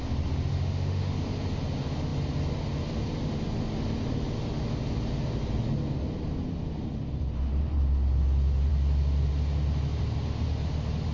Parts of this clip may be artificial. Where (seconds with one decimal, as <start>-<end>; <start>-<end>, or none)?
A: 0.5-1.2